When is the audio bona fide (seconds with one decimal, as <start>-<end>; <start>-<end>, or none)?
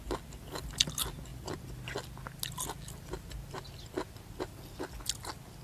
0.0-5.6